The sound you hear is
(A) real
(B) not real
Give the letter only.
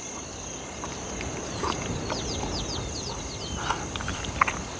A